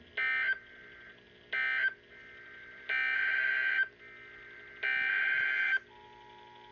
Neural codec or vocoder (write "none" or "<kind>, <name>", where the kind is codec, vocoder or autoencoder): none